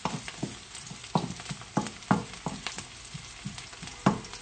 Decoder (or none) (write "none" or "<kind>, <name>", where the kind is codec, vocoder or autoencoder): none